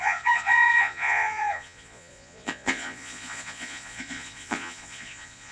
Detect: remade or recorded remade